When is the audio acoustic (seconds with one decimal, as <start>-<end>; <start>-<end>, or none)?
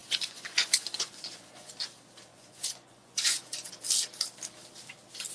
1.7-2.3; 3.7-5.3